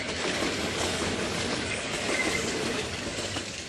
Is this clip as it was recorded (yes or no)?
no